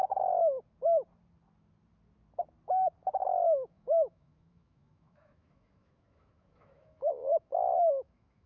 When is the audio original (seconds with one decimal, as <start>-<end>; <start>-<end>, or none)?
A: 0.0-3.2

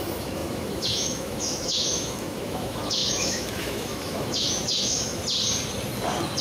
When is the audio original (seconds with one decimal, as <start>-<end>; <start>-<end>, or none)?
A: 5.2-6.4